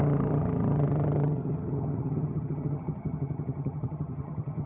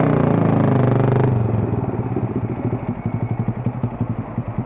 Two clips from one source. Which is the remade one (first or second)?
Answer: first